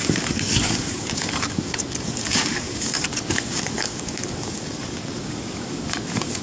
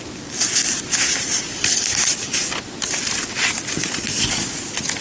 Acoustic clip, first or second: second